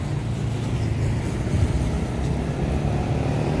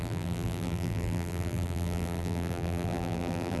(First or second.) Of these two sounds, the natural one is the first